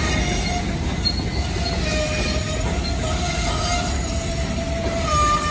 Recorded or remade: recorded